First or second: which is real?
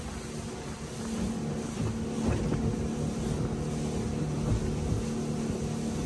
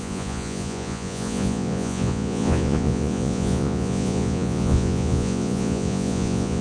first